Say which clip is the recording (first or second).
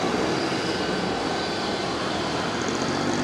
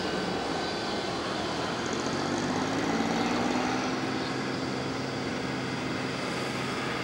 second